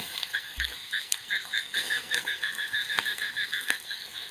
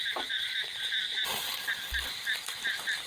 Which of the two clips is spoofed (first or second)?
first